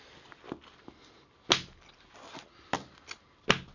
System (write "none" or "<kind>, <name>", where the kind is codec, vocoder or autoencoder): none